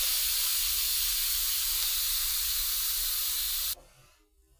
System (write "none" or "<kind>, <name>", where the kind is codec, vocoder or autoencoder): none